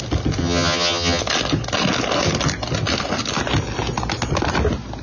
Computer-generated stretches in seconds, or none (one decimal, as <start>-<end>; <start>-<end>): 0.4-1.2